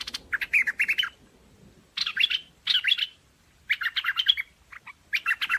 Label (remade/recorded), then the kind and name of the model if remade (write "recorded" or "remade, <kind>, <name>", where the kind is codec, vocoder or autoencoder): recorded